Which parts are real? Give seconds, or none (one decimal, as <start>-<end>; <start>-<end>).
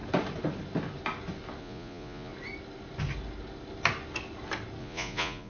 0.0-1.6; 2.3-4.8